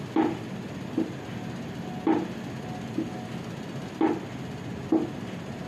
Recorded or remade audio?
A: recorded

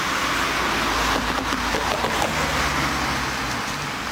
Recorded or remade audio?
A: recorded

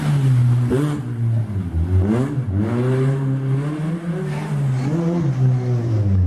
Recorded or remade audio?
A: recorded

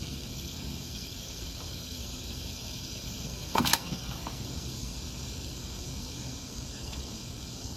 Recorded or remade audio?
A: remade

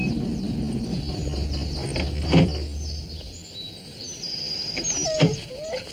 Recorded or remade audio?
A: recorded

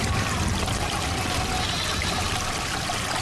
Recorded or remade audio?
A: recorded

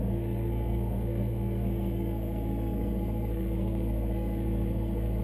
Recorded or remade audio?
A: remade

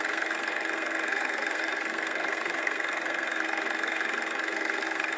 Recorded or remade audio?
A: remade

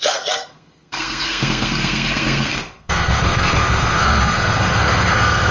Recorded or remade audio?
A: remade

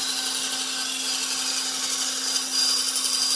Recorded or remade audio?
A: recorded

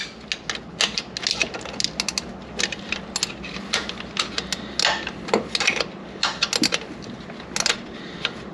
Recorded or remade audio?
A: recorded